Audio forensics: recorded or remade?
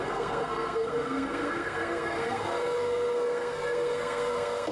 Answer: remade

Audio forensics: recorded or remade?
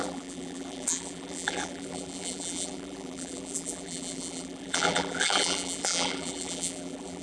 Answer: remade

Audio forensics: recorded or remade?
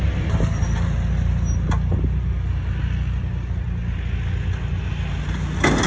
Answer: recorded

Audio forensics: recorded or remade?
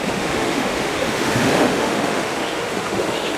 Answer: remade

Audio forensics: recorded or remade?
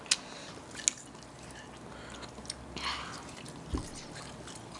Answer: recorded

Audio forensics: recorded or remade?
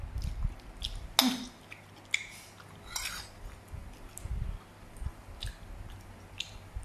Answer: recorded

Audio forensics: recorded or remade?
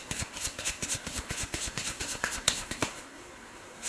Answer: remade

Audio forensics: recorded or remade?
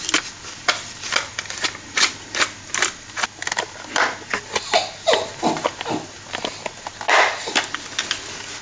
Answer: recorded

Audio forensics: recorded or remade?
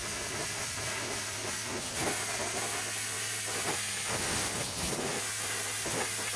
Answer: recorded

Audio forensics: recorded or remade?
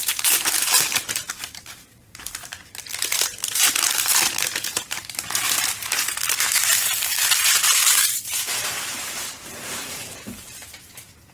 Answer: remade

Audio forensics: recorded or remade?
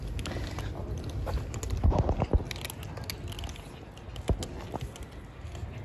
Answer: recorded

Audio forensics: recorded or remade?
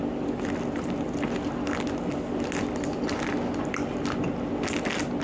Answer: recorded